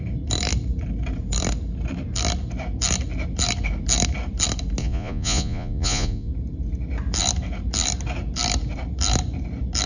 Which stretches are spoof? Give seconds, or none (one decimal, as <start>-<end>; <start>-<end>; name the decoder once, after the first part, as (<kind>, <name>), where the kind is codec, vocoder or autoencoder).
4.8-6.3 (vocoder, Vocos)